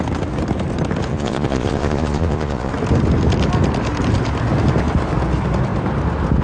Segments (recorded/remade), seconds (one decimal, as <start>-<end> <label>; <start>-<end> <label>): 0.0-1.1 recorded; 1.1-2.7 remade; 2.7-6.4 recorded